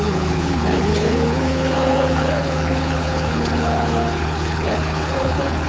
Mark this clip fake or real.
fake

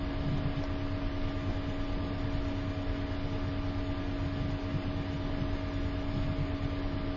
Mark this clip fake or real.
real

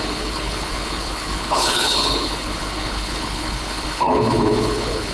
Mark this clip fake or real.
fake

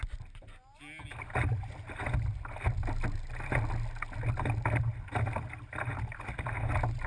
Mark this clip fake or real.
real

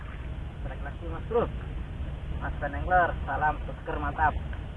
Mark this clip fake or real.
real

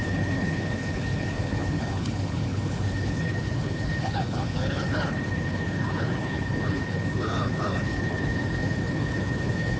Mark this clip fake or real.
fake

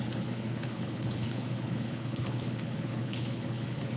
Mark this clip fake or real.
fake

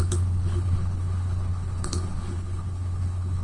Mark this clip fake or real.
fake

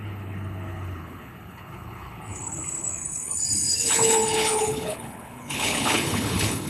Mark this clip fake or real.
fake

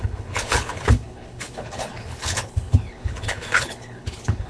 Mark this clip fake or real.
fake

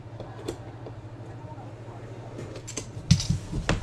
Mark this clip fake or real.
real